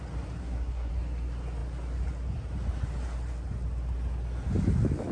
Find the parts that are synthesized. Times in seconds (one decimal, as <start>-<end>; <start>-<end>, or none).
0.4-0.9